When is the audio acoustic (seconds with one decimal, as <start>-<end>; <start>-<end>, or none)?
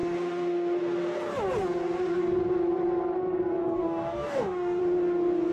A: 0.0-3.6; 4.8-5.5